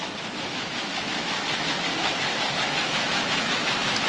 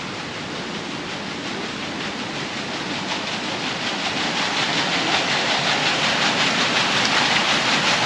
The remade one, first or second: first